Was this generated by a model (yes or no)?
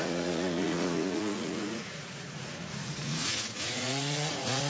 yes